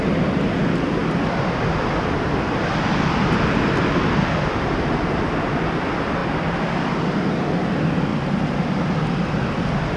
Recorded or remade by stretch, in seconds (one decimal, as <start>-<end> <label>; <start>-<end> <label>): 0.0-10.0 recorded